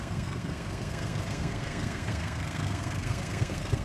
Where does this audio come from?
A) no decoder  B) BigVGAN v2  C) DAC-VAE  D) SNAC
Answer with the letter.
D